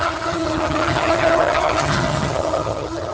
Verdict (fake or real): fake